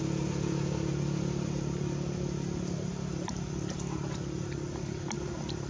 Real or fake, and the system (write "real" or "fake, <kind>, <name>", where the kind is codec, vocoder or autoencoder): fake, vocoder, BigVGAN v2